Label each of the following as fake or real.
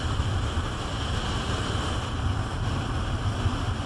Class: real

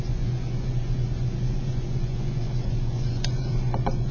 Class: fake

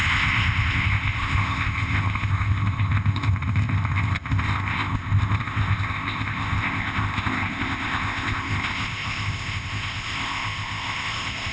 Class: fake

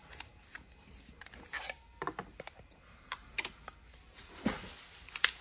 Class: real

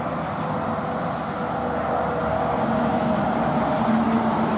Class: real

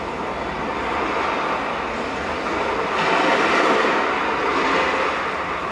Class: real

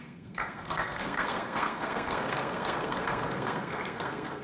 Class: fake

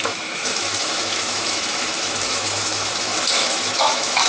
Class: fake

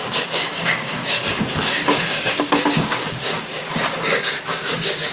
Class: fake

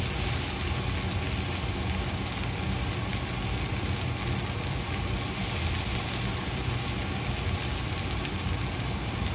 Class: real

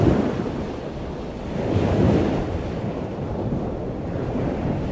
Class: real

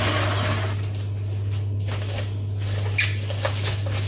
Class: real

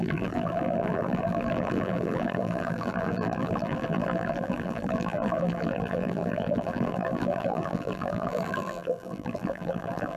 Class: fake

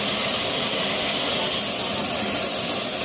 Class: real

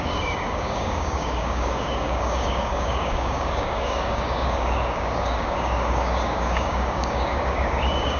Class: fake